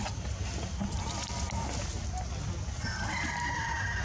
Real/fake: real